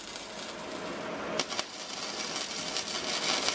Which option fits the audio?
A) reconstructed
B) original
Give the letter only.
B